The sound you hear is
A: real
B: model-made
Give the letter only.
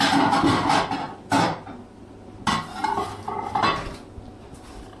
A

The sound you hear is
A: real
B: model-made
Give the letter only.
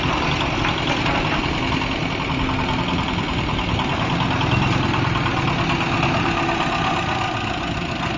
A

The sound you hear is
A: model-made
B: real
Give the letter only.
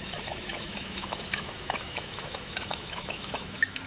A